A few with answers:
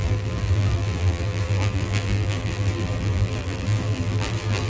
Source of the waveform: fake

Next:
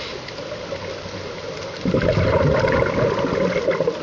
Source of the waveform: real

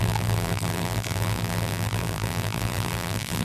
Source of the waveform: fake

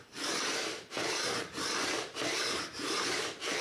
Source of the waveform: fake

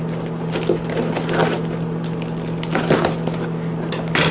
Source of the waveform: real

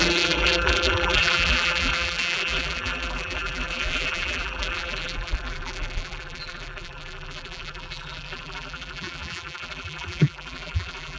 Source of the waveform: fake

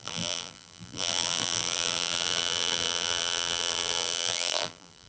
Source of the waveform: fake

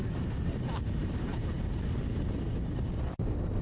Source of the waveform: fake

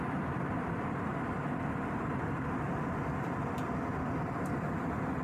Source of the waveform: real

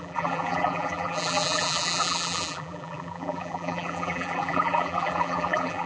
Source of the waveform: fake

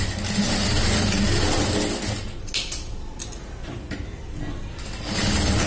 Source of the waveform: real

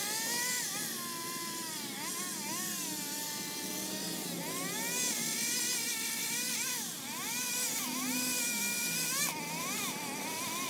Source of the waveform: real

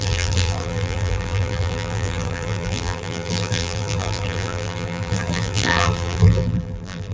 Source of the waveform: fake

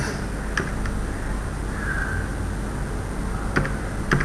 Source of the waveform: real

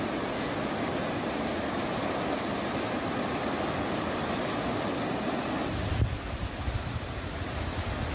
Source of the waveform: real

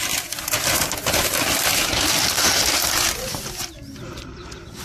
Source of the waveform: real